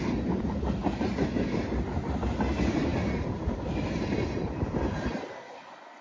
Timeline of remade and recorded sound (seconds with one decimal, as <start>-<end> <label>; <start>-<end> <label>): 0.0-6.0 recorded